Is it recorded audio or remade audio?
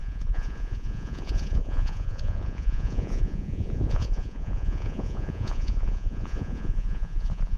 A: remade